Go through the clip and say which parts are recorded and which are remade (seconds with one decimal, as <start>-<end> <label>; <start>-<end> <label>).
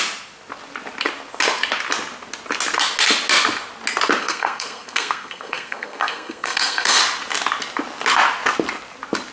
0.0-4.2 recorded; 4.2-7.0 remade; 7.0-9.3 recorded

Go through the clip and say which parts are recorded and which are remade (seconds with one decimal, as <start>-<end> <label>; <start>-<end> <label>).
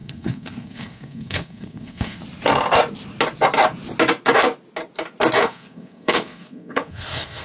0.0-2.2 remade; 2.2-5.4 recorded; 5.4-7.4 remade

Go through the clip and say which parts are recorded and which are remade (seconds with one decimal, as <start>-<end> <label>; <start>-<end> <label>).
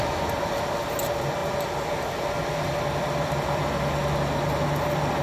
0.0-5.2 recorded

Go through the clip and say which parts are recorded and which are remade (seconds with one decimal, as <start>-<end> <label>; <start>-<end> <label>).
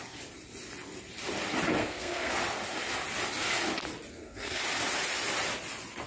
0.0-1.8 recorded; 1.8-2.3 remade; 2.3-4.1 recorded; 4.1-4.6 remade; 4.6-6.1 recorded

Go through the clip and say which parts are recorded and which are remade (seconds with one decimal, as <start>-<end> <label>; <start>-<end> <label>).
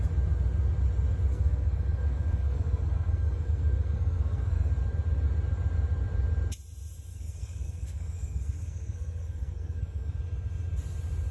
0.0-1.3 recorded; 1.3-4.7 remade; 4.7-7.1 recorded; 7.1-10.2 remade; 10.2-11.3 recorded